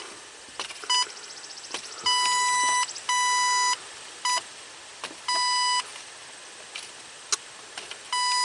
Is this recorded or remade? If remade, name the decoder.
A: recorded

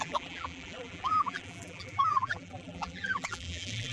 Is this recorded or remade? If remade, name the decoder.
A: remade, vocoder, BigVGAN v2